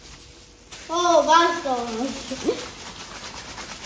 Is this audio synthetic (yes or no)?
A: no